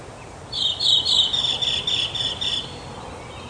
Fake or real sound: real